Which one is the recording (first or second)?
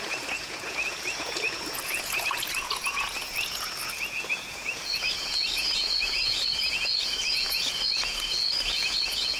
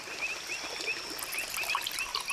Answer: second